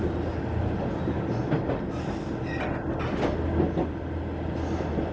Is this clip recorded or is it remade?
recorded